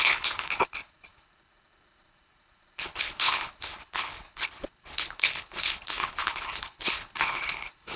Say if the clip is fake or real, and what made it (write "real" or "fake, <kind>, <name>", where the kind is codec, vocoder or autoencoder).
fake, codec, HILCodec